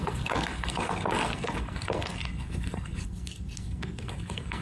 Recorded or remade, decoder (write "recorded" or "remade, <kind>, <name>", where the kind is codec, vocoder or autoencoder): remade, codec, SNAC